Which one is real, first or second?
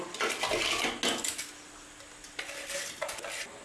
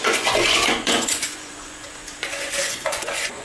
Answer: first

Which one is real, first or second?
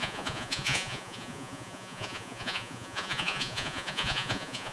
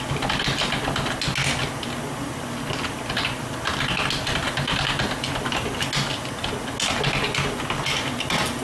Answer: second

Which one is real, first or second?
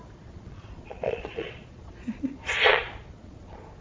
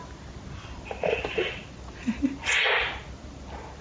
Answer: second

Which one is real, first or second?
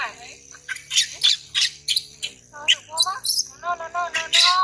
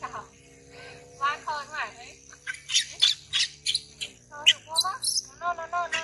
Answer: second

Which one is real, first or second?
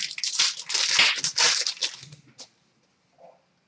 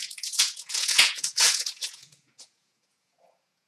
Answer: first